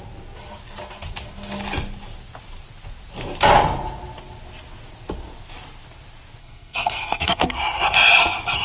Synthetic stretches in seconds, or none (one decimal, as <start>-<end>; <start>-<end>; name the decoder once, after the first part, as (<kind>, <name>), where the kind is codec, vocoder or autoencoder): 6.4-7.5 (codec, SNAC)